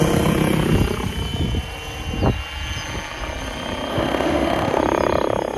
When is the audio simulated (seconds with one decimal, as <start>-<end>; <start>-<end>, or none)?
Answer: 3.9-4.8